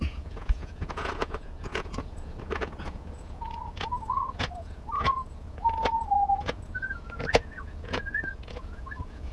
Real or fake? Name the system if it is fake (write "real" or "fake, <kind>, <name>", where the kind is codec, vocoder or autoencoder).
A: fake, vocoder, Vocos